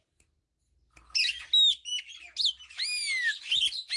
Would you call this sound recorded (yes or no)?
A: yes